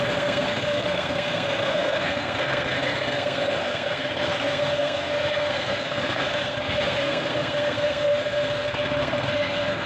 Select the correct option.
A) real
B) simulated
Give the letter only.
B